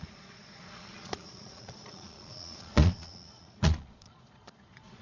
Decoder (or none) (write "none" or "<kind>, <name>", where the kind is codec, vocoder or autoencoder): vocoder, Vocos